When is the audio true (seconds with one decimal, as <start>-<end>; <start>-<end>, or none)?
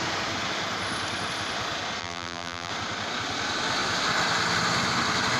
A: 0.0-2.0; 2.7-5.4